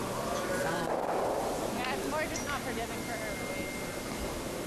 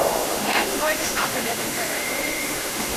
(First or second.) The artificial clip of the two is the second